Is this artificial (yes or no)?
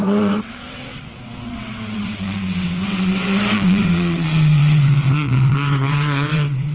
yes